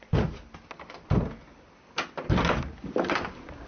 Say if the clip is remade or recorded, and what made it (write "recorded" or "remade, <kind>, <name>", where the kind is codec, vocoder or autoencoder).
recorded